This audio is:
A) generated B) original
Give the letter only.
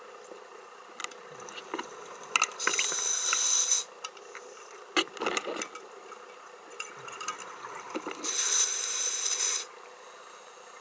B